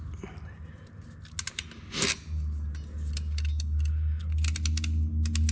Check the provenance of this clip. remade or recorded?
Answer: recorded